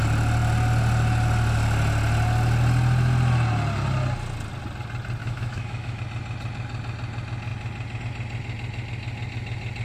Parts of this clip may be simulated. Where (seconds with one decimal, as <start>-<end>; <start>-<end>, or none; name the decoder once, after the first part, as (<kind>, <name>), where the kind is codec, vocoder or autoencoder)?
5.2-6.0 (autoencoder, DAC-VAE)

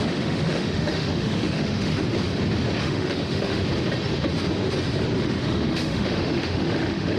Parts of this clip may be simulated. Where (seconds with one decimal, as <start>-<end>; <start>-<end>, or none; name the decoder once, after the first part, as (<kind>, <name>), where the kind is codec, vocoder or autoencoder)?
0.0-1.9 (autoencoder, DAC-VAE); 2.8-3.6; 5.2-7.2

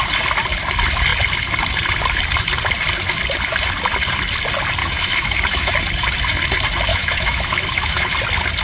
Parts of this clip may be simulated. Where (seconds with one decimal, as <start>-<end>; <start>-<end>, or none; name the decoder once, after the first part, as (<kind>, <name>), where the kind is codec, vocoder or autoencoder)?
4.8-5.7 (autoencoder, DAC-VAE); 6.9-8.1

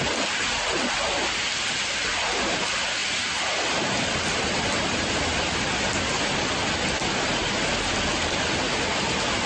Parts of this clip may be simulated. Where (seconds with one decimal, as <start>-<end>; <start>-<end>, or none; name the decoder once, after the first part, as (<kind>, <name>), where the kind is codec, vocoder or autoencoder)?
none

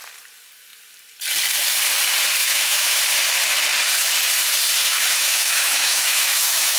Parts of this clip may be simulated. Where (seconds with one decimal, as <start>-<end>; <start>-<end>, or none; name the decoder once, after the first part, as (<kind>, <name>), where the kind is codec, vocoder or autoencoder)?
2.4-3.0 (autoencoder, DAC-VAE); 4.8-6.8